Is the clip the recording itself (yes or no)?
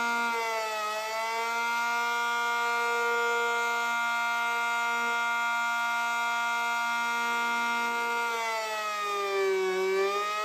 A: yes